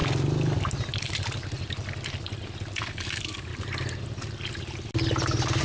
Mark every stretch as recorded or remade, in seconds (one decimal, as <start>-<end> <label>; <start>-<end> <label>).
0.0-2.8 recorded; 2.8-3.5 remade; 3.5-5.6 recorded